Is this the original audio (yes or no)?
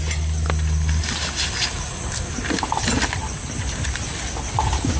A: yes